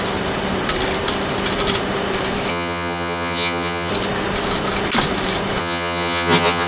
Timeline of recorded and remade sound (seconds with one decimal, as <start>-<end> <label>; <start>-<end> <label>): 0.0-2.5 recorded; 2.5-3.9 remade; 3.9-5.6 recorded; 5.6-6.7 remade

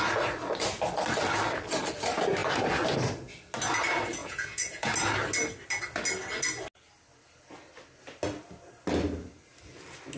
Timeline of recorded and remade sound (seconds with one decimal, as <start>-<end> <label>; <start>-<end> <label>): 0.0-4.2 recorded; 4.2-4.9 remade; 4.9-10.2 recorded

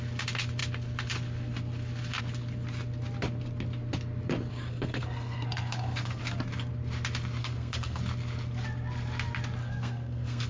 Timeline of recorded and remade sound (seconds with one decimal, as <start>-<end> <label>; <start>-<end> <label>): 0.0-4.5 recorded; 4.5-6.2 remade; 6.2-7.4 recorded; 7.4-8.0 remade; 8.0-9.6 recorded; 9.6-10.5 remade

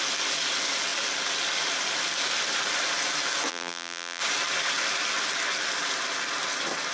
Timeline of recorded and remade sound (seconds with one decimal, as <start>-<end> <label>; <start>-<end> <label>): 0.0-3.5 recorded; 3.5-4.2 remade; 4.2-6.9 recorded

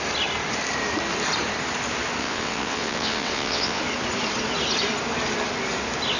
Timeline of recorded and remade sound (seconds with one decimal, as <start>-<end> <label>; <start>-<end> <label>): 0.0-2.2 recorded; 2.2-3.8 remade; 3.8-6.2 recorded

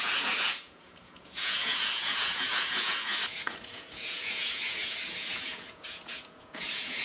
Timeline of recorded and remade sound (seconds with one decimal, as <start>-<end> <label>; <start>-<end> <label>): 0.0-7.0 remade

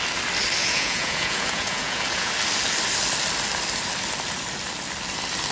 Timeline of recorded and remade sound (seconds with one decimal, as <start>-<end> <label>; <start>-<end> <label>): 0.0-0.6 recorded; 0.6-2.3 remade; 2.3-5.5 recorded